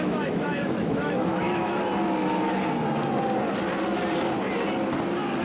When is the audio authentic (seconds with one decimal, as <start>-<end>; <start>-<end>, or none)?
1.9-5.4